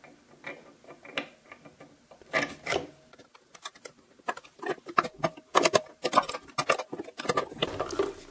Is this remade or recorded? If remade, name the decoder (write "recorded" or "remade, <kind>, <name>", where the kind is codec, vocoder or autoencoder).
recorded